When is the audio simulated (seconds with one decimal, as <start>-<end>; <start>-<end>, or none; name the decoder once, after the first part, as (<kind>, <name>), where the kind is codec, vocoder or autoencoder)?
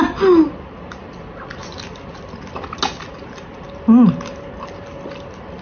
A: none